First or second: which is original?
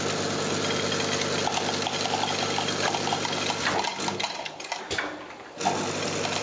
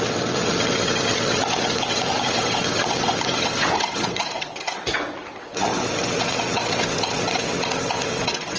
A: first